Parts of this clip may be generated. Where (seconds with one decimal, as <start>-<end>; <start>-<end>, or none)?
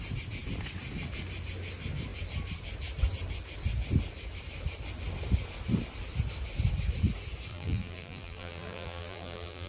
7.5-9.7